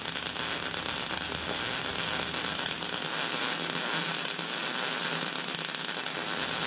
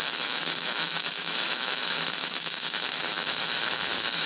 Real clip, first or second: first